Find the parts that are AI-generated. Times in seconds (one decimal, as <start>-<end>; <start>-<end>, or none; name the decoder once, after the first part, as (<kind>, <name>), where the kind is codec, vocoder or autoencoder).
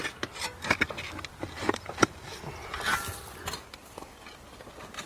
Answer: 1.4-2.3 (vocoder, BigVGAN v2)